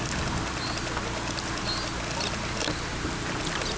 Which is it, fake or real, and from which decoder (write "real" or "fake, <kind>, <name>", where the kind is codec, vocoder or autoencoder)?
real